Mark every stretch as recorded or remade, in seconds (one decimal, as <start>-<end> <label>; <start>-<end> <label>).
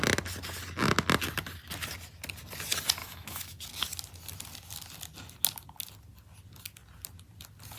0.0-3.0 recorded; 3.0-3.6 remade; 3.6-7.8 recorded